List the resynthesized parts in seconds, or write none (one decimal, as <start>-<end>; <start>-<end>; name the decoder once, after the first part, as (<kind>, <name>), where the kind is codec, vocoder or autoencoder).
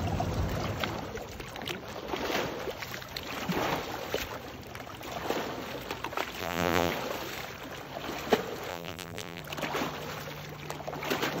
6.4-6.9 (vocoder, BigVGAN v2); 8.7-9.4